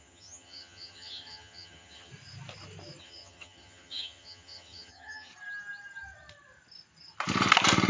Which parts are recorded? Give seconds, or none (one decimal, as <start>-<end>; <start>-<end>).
2.1-3.0; 5.3-7.9